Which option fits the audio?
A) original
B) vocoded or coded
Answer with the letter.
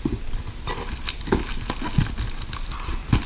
A